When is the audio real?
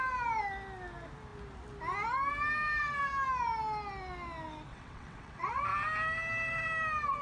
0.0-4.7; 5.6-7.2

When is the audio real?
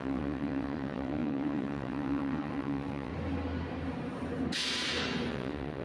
3.1-5.3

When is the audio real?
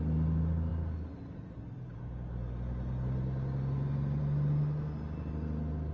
0.0-5.9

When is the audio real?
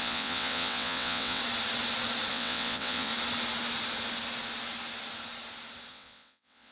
1.4-2.3; 3.1-5.9